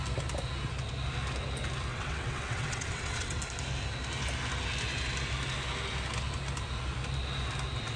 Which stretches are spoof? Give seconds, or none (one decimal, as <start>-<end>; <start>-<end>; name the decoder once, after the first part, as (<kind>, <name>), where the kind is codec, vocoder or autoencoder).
1.9-3.4 (vocoder, WaveNeXt)